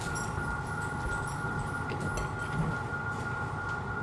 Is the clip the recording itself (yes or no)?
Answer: yes